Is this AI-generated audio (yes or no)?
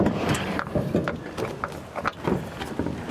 no